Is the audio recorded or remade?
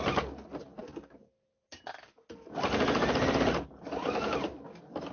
recorded